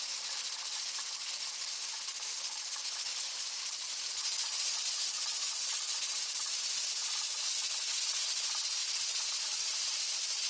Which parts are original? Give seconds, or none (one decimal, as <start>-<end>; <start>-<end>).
0.0-3.1; 6.6-8.8